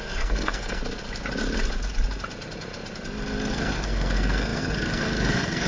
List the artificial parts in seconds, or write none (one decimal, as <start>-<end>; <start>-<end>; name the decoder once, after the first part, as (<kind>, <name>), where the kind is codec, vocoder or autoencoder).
0.0-0.8 (codec, SNAC); 3.5-5.7